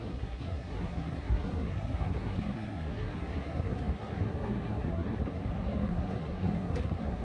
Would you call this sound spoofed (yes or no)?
yes